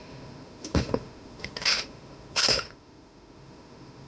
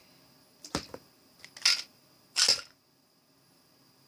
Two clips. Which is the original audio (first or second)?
second